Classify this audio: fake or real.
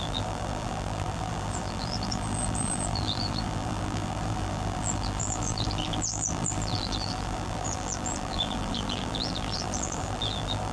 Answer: fake